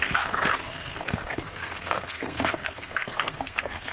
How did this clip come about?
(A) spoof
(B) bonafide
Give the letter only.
A